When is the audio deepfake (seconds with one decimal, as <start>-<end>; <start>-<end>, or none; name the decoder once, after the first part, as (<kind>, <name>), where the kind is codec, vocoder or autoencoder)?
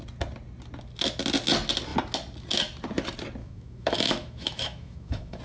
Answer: 3.4-5.4 (autoencoder, DAC-VAE)